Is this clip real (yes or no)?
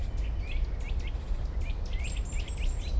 yes